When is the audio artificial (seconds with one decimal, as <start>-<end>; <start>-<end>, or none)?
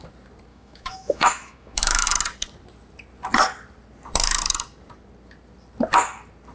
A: 0.5-2.1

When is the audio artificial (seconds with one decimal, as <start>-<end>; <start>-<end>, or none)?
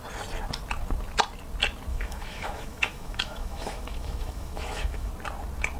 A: 1.9-5.1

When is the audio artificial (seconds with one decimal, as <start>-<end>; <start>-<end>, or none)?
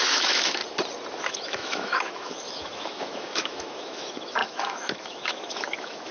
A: 0.0-0.6; 1.2-6.1